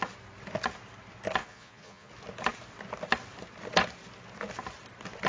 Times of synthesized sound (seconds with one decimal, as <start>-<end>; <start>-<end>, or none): 1.4-2.1